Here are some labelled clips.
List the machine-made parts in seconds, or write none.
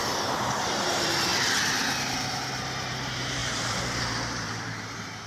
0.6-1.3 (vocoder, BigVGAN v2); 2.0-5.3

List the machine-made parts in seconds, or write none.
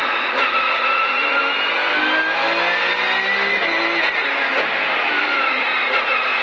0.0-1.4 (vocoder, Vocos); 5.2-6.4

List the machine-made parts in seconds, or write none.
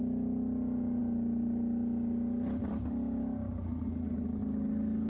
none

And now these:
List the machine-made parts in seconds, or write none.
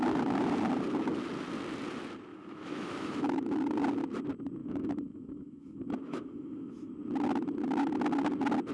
2.3-3.5 (autoencoder, DAC-VAE); 4.6-6.9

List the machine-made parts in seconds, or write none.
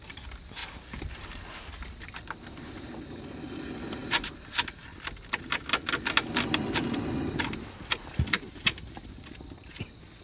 none